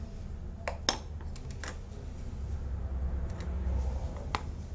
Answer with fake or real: real